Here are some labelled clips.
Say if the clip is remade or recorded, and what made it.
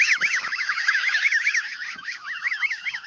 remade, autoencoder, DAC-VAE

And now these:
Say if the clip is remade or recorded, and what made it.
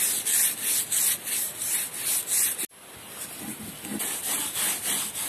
recorded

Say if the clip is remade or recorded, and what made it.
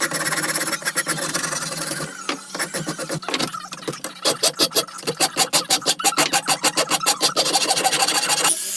recorded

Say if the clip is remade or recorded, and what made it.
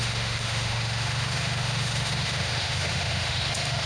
remade, autoencoder, DAC-VAE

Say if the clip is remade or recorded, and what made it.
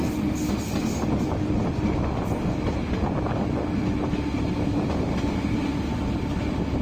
recorded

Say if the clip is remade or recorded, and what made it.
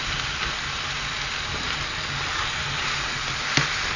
recorded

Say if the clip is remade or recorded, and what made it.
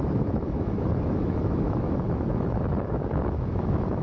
remade, autoencoder, DAC-VAE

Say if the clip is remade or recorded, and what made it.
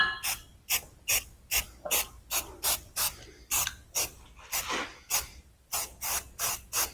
recorded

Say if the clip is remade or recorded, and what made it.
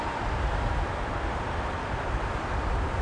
recorded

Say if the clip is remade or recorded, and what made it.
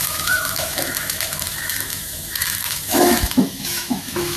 remade, autoencoder, DAC-VAE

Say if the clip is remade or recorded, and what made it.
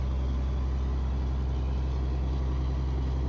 recorded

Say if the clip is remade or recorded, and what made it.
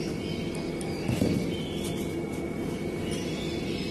recorded